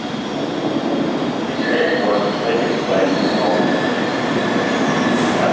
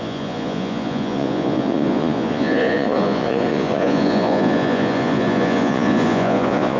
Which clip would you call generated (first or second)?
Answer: second